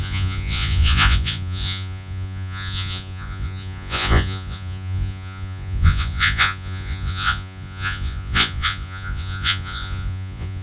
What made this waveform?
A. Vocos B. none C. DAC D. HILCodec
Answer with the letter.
A